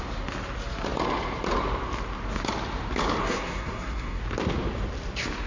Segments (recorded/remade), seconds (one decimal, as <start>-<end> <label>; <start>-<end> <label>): 0.0-3.2 recorded; 3.2-4.2 remade; 4.2-5.5 recorded